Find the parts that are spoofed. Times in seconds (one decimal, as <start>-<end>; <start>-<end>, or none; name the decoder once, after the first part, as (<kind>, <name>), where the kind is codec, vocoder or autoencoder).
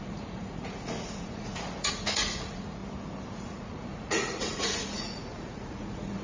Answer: 0.0-2.8 (vocoder, Vocos); 3.3-6.2